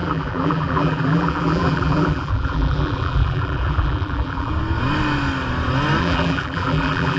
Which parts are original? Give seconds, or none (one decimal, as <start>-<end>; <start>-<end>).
4.5-6.0

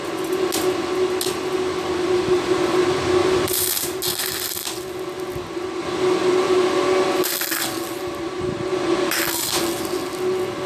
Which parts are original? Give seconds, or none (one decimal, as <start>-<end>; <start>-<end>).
0.0-3.2; 4.0-10.7